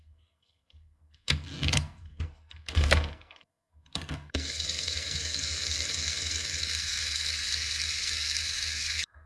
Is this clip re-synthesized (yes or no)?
yes